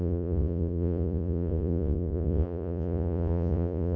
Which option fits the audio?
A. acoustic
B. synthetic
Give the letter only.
B